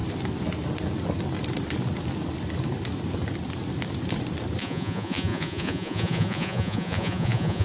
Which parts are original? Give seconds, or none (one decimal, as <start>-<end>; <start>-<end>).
0.0-4.6